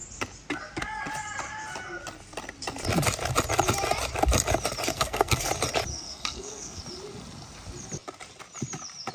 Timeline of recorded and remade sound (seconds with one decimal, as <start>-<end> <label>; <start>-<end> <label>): 0.0-4.9 recorded; 4.9-5.5 remade; 5.5-5.9 recorded; 5.9-6.8 remade; 6.8-9.1 recorded